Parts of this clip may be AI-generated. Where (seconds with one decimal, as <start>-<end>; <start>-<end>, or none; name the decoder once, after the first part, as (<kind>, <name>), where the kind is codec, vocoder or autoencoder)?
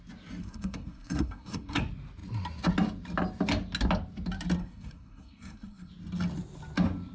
0.4-1.8 (codec, SNAC); 4.6-5.9